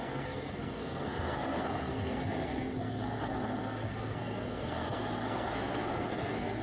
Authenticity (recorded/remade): remade